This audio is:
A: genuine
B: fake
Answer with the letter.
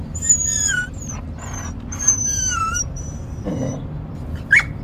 B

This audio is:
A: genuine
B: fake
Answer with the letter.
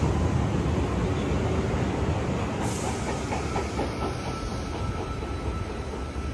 A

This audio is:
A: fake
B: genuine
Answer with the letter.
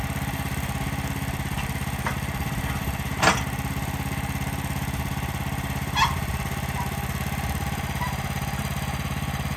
B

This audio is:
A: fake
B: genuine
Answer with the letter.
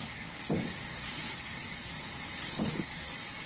A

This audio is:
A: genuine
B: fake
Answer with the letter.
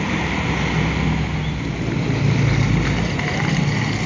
A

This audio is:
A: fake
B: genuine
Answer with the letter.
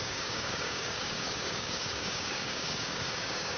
A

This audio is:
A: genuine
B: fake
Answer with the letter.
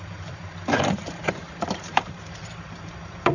B